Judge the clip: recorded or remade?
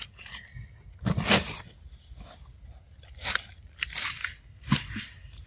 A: recorded